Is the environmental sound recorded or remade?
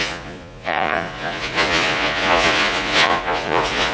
remade